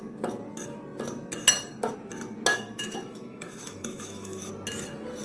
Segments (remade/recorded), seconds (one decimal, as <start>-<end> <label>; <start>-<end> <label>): 0.0-2.5 recorded; 2.5-4.5 remade; 4.5-5.2 recorded

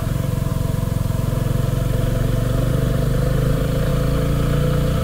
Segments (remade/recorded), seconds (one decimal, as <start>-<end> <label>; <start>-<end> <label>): 0.0-0.5 remade; 0.5-2.7 recorded; 2.7-3.9 remade; 3.9-5.0 recorded

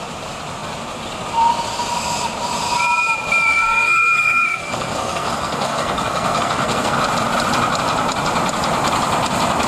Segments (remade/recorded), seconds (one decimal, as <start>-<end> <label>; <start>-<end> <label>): 0.0-3.5 recorded; 3.5-7.0 remade; 7.0-9.7 recorded

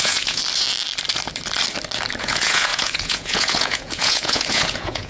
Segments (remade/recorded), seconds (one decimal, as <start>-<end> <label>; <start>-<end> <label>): 0.0-0.4 remade; 0.4-2.2 recorded; 2.2-5.1 remade

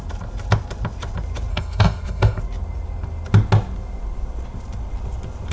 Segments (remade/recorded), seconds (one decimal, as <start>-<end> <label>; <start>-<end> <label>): 0.0-1.5 recorded; 1.5-2.4 remade; 2.4-5.5 recorded

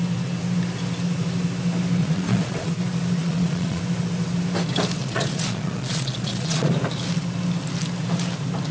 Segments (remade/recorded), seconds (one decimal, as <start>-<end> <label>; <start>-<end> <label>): 0.0-2.0 recorded; 2.0-2.7 remade; 2.7-3.2 recorded; 3.2-3.8 remade; 3.8-5.0 recorded; 5.0-6.7 remade; 6.7-8.7 recorded

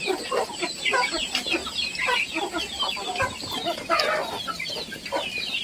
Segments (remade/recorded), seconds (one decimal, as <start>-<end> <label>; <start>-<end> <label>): 0.0-1.6 recorded; 1.6-4.0 remade; 4.0-5.6 recorded

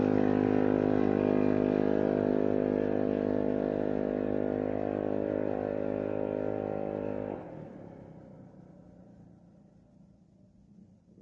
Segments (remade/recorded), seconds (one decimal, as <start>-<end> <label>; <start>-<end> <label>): 0.0-11.2 recorded